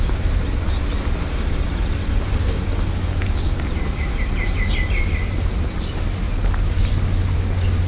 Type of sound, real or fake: real